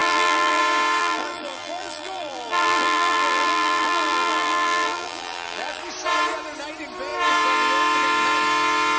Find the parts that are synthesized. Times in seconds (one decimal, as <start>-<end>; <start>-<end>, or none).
0.0-0.6; 1.0-5.8

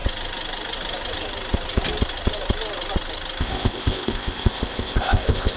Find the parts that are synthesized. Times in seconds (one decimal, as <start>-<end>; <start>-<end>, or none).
3.4-5.6

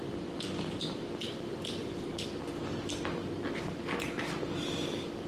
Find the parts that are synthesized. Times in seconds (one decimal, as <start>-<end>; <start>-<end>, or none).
none